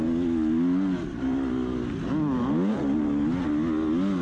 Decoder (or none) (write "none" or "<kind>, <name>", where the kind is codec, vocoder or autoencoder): none